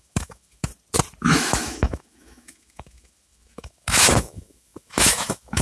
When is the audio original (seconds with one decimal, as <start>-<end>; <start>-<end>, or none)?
0.7-1.2

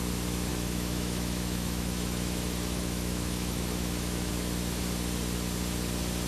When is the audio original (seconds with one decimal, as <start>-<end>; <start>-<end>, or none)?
0.0-0.5; 4.3-6.3

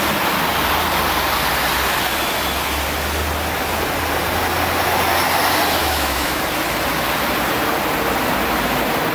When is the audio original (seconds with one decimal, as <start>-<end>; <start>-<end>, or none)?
0.0-5.8; 6.4-9.1

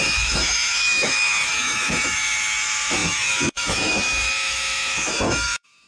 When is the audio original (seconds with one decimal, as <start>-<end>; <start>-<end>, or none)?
none

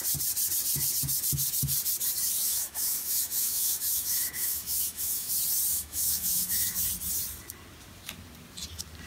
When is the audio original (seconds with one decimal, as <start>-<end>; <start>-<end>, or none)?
0.0-2.5; 5.3-5.7; 6.8-9.1